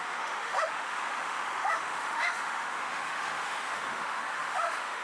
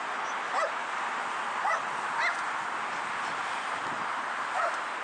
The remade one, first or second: first